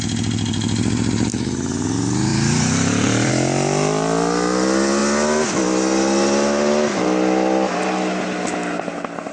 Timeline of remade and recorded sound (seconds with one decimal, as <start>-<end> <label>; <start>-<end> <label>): 0.0-2.3 recorded; 2.3-3.3 remade; 3.3-9.3 recorded